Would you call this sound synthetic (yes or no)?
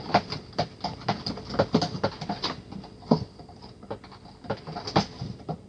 no